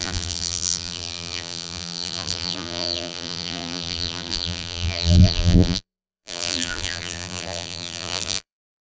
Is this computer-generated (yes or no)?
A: yes